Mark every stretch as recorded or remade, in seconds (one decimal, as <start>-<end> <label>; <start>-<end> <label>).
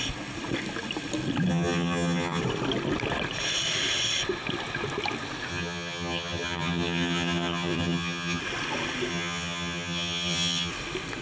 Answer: 0.0-1.5 recorded; 1.5-2.4 remade; 2.4-5.5 recorded; 5.5-8.4 remade; 8.4-9.1 recorded; 9.1-10.7 remade; 10.7-11.2 recorded